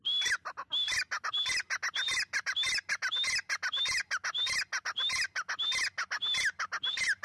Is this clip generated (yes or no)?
no